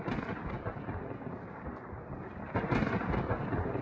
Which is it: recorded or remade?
recorded